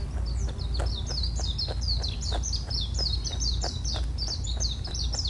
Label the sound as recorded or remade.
recorded